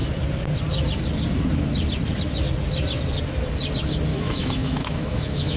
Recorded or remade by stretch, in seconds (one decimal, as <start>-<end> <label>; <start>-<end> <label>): 0.0-4.1 recorded; 4.1-5.6 remade